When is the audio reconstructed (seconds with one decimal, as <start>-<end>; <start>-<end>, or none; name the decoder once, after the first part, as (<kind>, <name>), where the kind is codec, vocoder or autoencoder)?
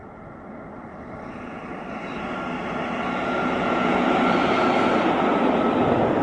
3.4-4.1 (vocoder, Vocos)